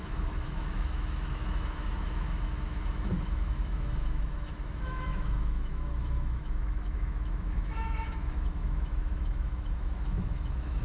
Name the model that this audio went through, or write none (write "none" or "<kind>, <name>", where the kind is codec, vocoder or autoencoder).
autoencoder, DAC-VAE